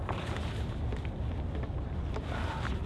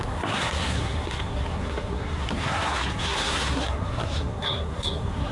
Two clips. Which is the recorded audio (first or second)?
first